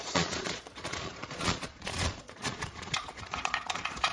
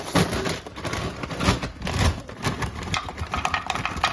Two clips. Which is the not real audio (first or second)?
first